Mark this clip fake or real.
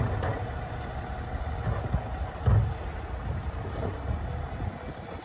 real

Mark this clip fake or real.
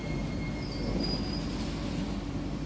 real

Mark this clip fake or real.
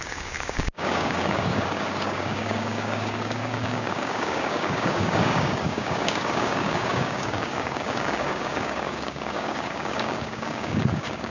fake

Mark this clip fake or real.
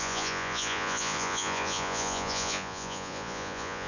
fake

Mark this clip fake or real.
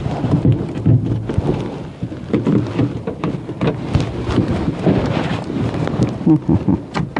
real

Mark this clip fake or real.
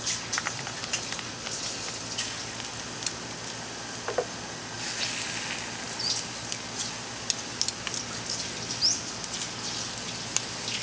real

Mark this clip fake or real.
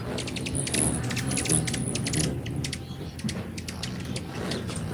real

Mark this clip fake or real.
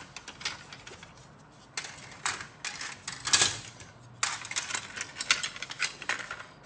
real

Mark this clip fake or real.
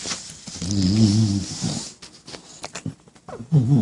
real